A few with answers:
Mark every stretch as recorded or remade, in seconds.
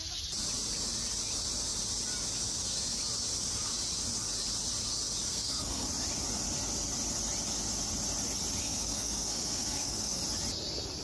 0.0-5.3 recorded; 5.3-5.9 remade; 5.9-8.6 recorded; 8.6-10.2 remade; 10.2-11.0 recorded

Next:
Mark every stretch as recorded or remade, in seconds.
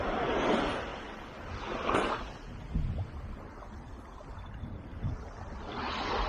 0.0-6.3 recorded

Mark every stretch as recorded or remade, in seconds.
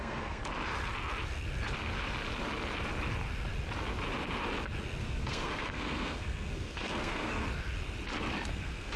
0.0-0.4 remade; 0.4-5.0 recorded; 5.0-7.5 remade; 7.5-8.5 recorded; 8.5-9.0 remade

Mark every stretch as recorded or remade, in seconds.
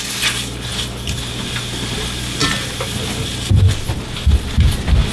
0.0-5.1 recorded